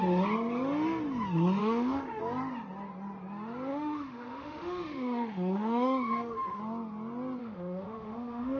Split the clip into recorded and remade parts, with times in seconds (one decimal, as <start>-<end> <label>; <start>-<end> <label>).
0.0-1.6 recorded; 1.6-2.2 remade; 2.2-3.7 recorded; 3.7-6.6 remade; 6.6-7.4 recorded; 7.4-8.6 remade